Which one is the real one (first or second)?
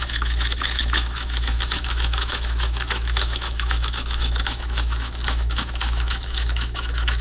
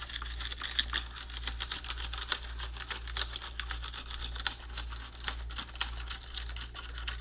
second